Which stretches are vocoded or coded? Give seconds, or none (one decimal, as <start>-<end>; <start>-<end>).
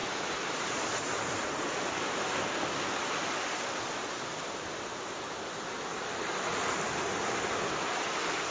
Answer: 0.0-1.7